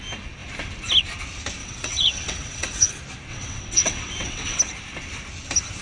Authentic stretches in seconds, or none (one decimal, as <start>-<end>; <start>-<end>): 0.0-1.6; 2.9-3.3; 4.6-5.8